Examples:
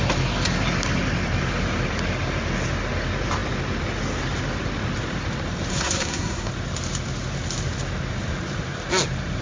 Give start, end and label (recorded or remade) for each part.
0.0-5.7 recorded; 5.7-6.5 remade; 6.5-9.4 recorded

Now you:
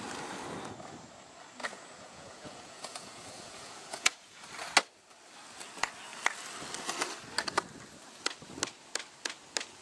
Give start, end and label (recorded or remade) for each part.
0.0-1.6 recorded; 1.6-4.4 remade; 4.4-9.8 recorded

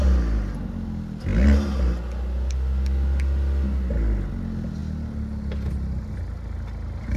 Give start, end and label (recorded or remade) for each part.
0.0-7.2 recorded